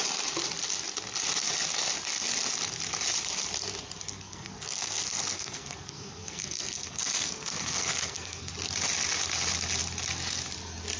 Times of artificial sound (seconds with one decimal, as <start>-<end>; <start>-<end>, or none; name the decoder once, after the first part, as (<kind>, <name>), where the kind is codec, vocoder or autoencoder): 4.1-8.5 (codec, SNAC)